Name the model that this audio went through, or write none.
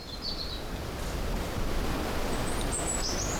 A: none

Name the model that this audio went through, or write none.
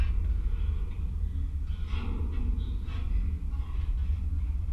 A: none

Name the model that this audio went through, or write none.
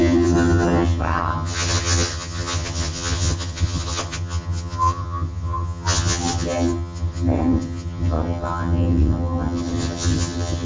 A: vocoder, HiFi-GAN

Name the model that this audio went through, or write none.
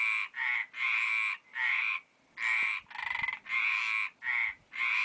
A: none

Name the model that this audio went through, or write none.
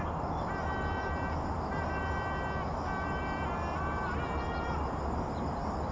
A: none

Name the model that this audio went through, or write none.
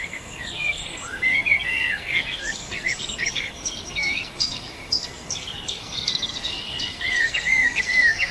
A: codec, SNAC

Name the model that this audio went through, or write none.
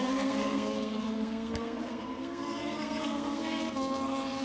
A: codec, SNAC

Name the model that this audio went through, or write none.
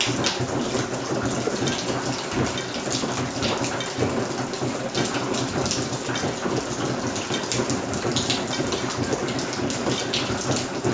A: none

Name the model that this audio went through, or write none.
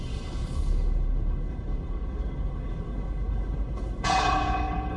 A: codec, HILCodec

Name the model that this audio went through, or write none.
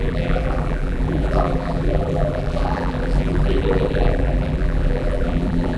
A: vocoder, BigVGAN v2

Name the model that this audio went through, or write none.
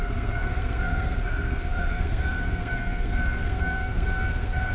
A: codec, SNAC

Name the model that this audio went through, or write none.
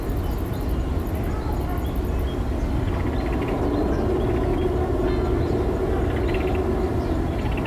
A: none